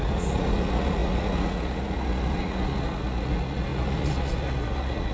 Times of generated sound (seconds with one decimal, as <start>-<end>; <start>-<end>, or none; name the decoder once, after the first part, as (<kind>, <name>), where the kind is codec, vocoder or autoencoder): 0.0-5.1 (vocoder, Vocos)